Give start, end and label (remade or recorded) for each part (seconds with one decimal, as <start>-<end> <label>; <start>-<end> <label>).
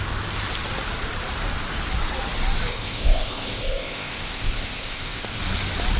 0.0-2.7 recorded; 2.7-5.4 remade; 5.4-6.0 recorded